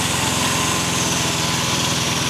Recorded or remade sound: recorded